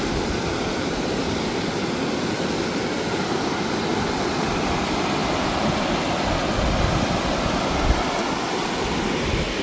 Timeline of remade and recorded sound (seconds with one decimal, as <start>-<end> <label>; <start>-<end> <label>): 0.0-9.6 recorded